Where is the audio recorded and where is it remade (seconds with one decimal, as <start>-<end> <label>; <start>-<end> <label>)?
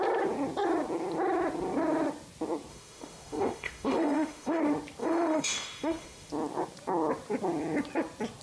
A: 0.0-2.7 recorded; 2.7-4.6 remade; 4.6-5.0 recorded; 5.0-6.3 remade; 6.3-8.4 recorded